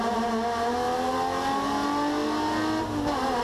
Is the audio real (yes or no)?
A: yes